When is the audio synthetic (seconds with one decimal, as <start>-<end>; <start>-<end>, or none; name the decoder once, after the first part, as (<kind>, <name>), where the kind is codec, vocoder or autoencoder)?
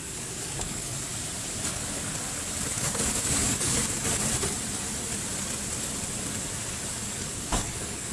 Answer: 0.0-1.1 (codec, DAC); 1.7-2.1; 2.7-3.8; 6.9-8.1